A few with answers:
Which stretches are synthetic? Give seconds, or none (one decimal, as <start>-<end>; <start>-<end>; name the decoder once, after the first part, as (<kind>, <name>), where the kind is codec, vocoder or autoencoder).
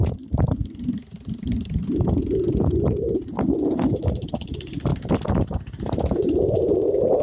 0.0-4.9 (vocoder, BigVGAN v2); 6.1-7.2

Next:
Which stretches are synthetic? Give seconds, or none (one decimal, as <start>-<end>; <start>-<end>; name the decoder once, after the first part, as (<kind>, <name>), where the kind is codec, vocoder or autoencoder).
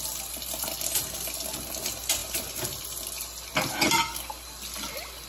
none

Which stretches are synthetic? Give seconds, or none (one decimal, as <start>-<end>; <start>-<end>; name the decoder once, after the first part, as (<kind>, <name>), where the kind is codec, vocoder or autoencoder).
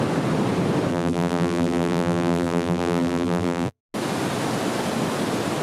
0.9-3.8 (vocoder, BigVGAN v2)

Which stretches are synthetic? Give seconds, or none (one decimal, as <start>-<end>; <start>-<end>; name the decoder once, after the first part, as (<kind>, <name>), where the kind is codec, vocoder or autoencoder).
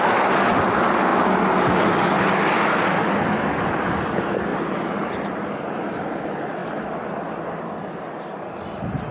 4.5-5.5 (vocoder, BigVGAN v2)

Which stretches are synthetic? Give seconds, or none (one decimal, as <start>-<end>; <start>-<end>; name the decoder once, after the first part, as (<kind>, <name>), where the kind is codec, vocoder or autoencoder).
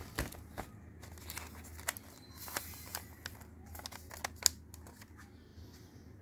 5.5-6.2 (vocoder, BigVGAN v2)